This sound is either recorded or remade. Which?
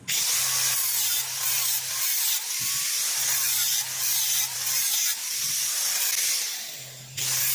recorded